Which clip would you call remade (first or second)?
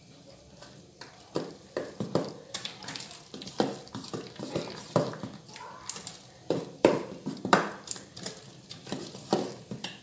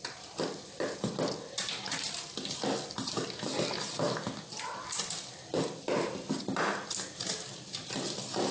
first